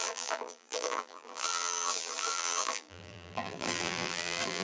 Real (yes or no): no